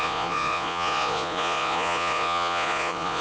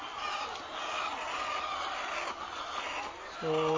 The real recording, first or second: second